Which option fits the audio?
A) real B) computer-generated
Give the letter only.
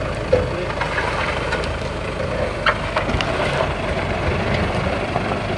B